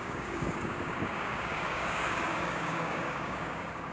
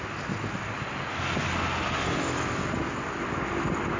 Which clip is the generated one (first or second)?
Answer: first